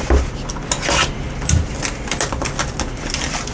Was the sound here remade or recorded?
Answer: recorded